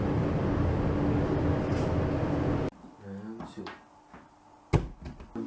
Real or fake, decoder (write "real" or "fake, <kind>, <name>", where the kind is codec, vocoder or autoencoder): real